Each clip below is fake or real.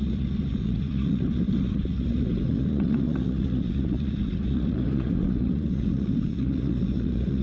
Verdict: fake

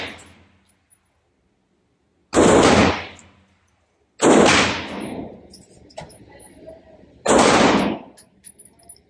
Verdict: real